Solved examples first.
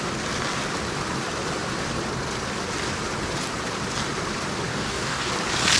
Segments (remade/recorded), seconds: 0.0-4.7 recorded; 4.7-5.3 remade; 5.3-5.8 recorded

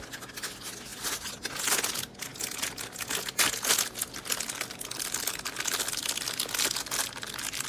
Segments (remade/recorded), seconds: 0.0-7.7 recorded